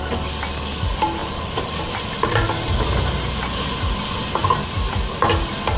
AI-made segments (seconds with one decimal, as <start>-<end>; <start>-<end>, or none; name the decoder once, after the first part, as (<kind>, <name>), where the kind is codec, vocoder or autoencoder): 1.2-2.4 (vocoder, BigVGAN v2)